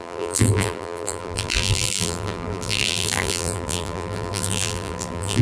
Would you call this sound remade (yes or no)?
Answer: yes